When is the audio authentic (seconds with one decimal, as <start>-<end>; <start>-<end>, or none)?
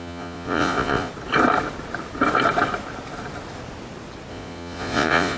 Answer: 1.1-4.3